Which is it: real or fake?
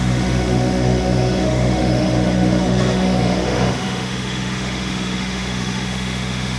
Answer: fake